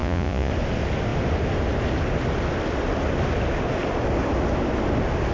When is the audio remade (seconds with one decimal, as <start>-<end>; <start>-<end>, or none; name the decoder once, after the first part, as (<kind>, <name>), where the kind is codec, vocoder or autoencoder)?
0.0-0.5 (vocoder, Vocos)